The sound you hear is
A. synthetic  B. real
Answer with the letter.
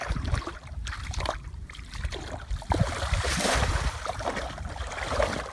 A